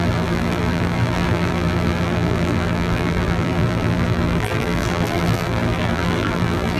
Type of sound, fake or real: fake